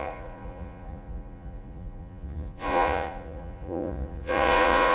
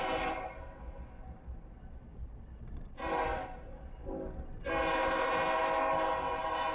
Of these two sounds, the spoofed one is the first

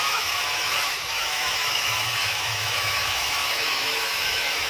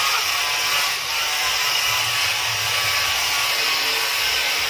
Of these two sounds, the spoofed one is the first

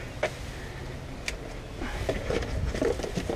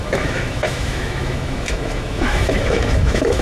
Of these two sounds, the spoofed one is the second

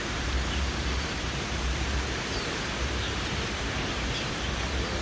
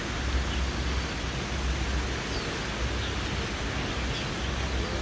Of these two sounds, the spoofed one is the first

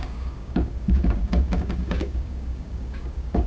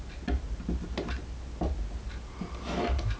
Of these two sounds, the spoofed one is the first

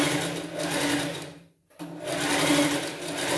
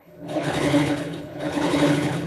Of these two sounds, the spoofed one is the second